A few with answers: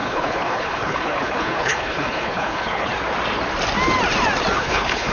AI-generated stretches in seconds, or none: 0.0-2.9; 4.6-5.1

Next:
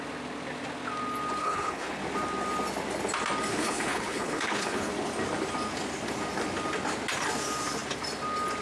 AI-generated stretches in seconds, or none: 1.4-2.0; 3.5-4.9

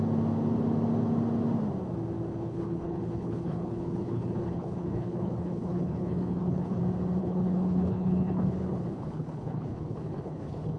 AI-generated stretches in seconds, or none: 2.3-6.8; 7.2-10.8

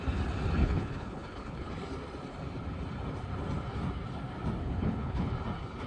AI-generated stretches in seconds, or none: 0.6-1.7; 4.6-5.3

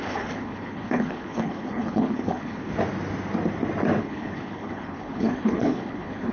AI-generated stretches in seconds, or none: 0.0-2.7; 4.0-6.3